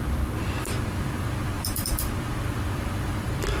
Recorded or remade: remade